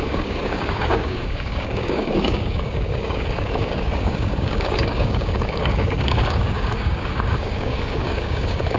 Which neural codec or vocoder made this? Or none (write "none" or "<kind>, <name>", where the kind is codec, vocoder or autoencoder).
codec, DAC